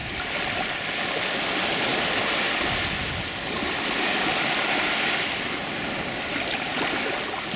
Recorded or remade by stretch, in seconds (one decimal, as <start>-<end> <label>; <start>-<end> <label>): 0.0-0.7 remade; 0.7-1.9 recorded; 1.9-6.5 remade; 6.5-7.6 recorded